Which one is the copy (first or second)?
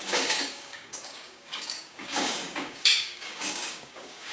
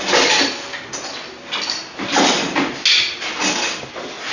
first